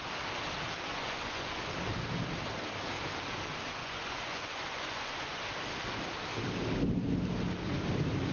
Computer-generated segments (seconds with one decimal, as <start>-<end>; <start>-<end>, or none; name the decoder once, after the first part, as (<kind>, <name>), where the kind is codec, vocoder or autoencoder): 0.9-1.6 (vocoder, Vocos); 3.8-5.4